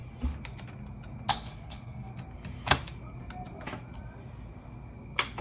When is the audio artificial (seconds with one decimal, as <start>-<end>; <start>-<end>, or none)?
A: 1.3-2.1